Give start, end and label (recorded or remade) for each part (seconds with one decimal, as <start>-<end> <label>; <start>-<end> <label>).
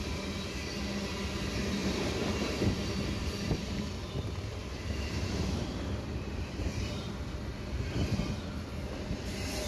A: 0.0-1.8 recorded; 1.8-3.9 remade; 3.9-4.6 recorded; 4.6-7.1 remade; 7.1-9.7 recorded